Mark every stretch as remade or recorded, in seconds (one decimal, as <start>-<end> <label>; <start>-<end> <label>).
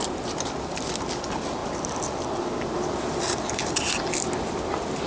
0.0-5.1 recorded